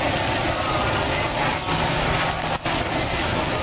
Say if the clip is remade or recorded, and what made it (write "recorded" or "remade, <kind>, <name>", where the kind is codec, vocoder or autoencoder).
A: recorded